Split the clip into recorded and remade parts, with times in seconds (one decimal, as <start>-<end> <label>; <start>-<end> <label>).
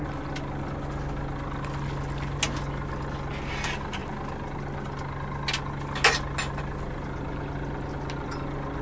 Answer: 0.0-8.8 recorded